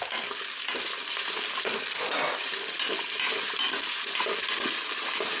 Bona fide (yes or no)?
yes